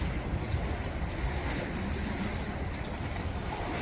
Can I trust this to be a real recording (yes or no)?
yes